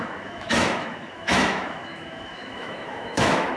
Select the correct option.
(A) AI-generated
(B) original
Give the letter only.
A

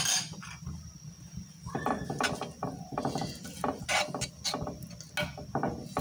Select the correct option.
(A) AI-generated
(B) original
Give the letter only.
B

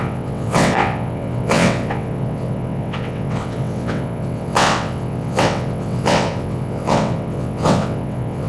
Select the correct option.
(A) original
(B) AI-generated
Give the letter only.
B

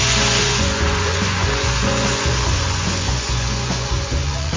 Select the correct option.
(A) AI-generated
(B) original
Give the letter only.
A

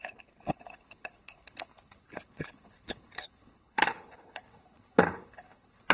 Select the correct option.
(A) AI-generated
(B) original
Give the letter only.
A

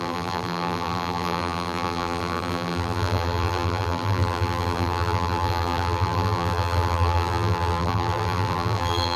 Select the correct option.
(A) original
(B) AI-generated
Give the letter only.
B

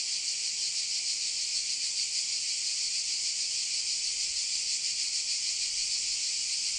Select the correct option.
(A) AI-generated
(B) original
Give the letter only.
B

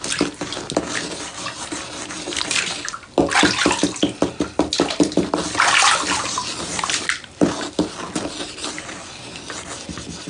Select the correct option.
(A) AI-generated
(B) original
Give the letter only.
B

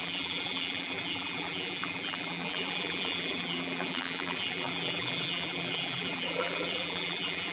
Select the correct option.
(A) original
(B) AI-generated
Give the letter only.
B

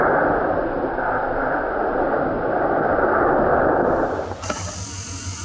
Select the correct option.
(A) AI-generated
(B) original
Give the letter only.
B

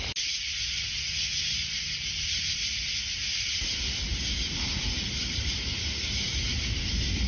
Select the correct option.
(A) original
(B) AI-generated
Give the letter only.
A